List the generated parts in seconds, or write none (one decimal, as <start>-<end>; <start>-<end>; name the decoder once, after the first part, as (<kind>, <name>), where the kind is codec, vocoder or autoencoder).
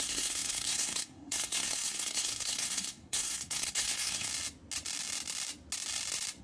0.0-4.3 (codec, SNAC)